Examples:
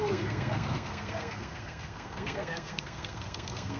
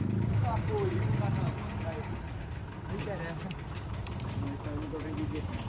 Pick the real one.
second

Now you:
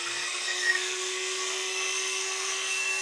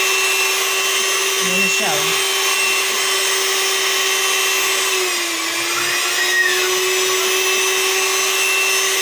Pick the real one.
second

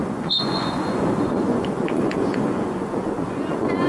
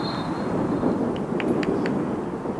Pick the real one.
second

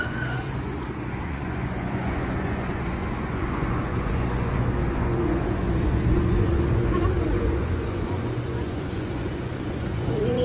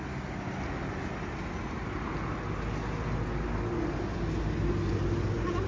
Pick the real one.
second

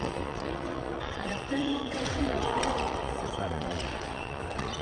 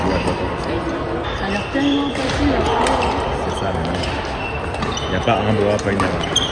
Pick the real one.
second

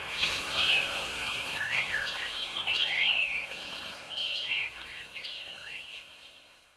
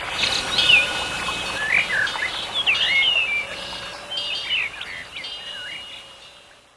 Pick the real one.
second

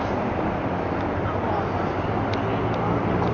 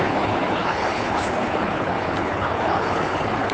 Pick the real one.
first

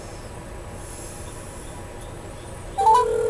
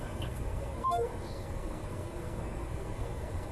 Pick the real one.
first